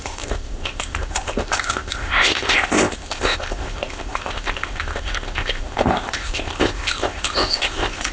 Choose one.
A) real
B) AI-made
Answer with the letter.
B